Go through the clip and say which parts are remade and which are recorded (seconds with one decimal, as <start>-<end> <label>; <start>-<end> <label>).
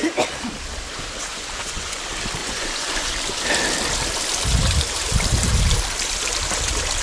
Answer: 0.0-1.3 recorded; 1.3-2.0 remade; 2.0-2.4 recorded; 2.4-3.1 remade; 3.1-7.0 recorded